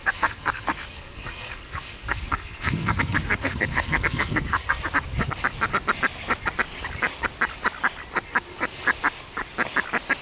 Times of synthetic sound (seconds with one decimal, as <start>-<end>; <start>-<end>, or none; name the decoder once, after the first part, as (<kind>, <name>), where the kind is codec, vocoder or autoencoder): 0.0-4.8 (codec, SNAC)